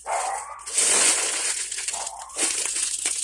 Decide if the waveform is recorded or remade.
remade